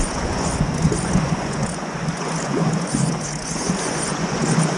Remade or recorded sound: remade